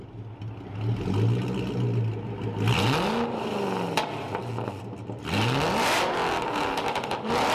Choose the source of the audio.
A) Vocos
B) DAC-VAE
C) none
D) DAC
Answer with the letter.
C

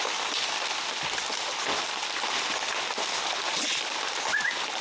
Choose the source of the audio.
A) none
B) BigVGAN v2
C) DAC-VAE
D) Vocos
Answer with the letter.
A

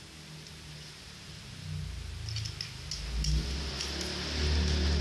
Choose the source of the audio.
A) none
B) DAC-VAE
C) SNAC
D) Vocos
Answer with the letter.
A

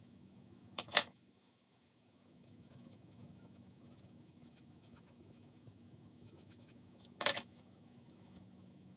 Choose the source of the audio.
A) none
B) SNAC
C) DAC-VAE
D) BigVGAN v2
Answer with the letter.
C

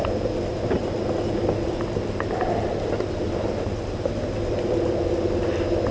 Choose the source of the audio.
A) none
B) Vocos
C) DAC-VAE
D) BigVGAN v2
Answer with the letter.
A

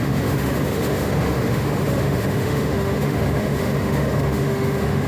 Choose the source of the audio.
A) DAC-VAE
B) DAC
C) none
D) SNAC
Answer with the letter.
A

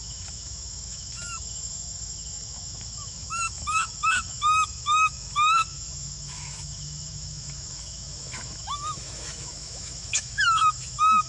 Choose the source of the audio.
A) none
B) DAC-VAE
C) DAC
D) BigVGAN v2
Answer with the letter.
B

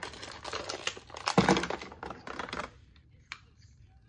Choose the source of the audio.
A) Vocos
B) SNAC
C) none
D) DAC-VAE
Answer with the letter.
C